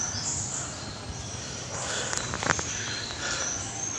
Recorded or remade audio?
recorded